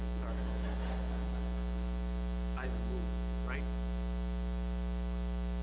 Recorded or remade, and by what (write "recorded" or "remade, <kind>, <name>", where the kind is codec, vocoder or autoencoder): recorded